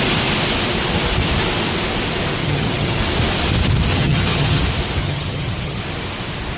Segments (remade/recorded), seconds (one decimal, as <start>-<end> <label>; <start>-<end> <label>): 0.0-2.4 recorded; 2.4-3.0 remade; 3.0-3.9 recorded; 3.9-4.6 remade; 4.6-5.0 recorded; 5.0-5.8 remade; 5.8-6.6 recorded